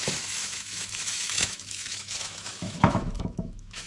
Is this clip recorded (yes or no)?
no